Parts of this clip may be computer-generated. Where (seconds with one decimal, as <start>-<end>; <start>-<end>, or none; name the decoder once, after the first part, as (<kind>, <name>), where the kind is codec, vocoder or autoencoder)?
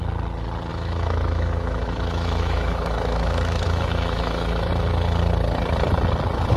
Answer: 0.7-4.7 (autoencoder, DAC-VAE)